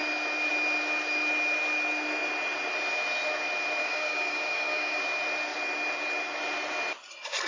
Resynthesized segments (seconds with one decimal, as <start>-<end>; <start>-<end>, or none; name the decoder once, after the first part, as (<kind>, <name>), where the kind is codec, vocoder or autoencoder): 3.8-5.0 (codec, DAC)